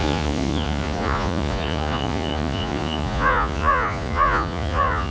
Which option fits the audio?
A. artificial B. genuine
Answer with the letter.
A